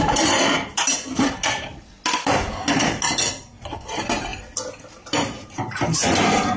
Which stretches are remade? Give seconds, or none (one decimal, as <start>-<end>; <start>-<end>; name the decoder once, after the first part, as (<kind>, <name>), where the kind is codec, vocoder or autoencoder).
0.0-1.7 (vocoder, BigVGAN v2); 3.4-4.3; 5.0-6.6